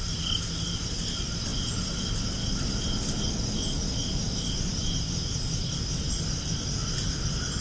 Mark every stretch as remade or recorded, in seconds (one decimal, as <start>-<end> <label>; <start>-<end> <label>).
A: 0.0-7.6 recorded